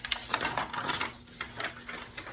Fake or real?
real